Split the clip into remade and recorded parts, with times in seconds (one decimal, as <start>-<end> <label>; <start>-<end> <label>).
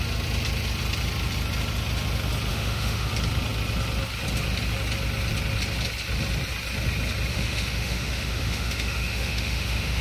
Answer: 0.0-2.5 recorded; 2.5-3.1 remade; 3.1-7.3 recorded; 7.3-10.0 remade